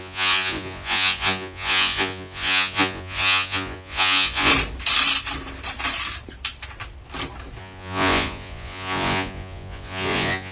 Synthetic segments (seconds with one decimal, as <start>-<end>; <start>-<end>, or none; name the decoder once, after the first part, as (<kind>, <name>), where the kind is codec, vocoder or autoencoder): 0.0-4.5 (vocoder, Vocos); 7.6-10.5